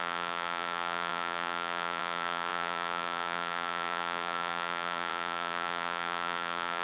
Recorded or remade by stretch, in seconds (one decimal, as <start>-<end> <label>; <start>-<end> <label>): 0.0-6.8 remade